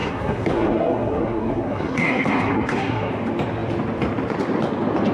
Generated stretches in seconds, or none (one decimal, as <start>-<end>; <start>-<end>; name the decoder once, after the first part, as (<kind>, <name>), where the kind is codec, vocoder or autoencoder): 0.0-3.1 (codec, SNAC)